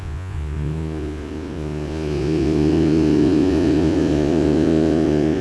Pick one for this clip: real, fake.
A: fake